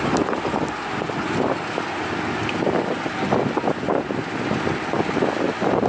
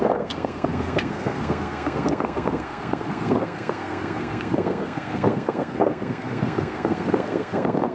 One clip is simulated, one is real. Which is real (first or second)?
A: first